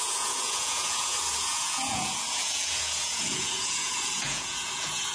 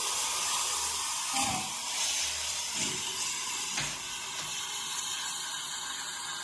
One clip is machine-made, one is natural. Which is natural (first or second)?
second